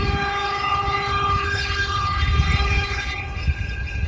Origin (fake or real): fake